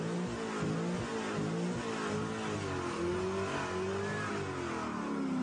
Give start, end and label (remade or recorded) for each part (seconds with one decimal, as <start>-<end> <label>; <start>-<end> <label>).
0.0-5.4 recorded